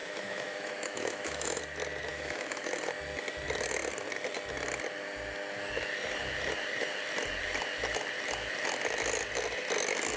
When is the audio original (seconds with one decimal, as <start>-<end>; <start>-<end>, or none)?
1.6-2.1; 2.7-10.2